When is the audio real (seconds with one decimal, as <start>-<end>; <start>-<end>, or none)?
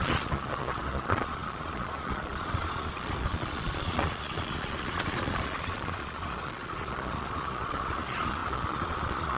none